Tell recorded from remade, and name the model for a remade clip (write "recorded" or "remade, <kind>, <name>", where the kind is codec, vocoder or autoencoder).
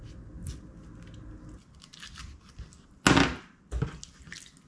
recorded